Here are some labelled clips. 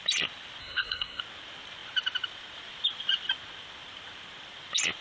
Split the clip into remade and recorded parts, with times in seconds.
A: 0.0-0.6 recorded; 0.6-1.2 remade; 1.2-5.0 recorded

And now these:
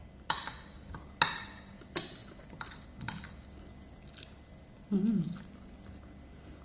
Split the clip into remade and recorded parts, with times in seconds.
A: 0.0-6.6 recorded

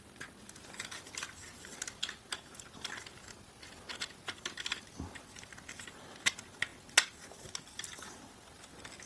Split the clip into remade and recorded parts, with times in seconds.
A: 0.0-9.1 recorded